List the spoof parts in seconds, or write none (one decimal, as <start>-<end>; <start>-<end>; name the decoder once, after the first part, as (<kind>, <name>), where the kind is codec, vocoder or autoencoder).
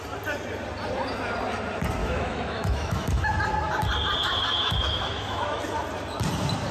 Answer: 2.0-3.2 (autoencoder, DAC-VAE); 4.2-5.6